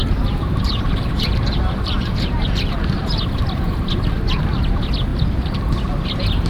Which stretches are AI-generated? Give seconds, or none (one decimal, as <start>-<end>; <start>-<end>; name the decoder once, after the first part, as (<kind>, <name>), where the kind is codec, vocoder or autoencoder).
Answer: 0.0-3.2 (vocoder, BigVGAN v2); 5.1-5.6